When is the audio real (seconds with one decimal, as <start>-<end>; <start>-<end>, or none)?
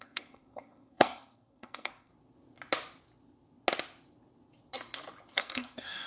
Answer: 2.1-5.3